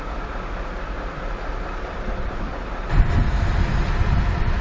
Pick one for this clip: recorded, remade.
recorded